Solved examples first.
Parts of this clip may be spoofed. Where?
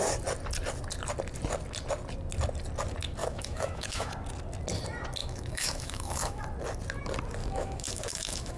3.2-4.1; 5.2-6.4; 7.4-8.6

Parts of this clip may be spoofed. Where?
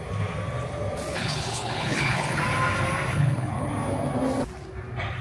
1.1-2.4; 3.1-3.7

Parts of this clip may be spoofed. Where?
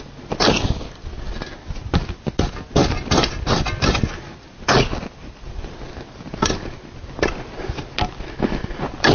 none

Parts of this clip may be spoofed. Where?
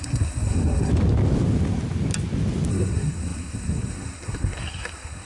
0.0-0.9; 2.7-5.3